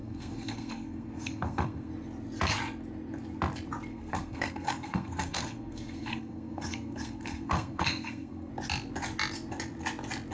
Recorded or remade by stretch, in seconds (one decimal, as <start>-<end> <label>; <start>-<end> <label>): 0.0-1.9 remade; 1.9-3.9 recorded; 3.9-8.5 remade; 8.5-10.3 recorded